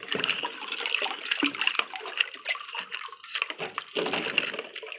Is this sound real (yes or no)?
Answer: yes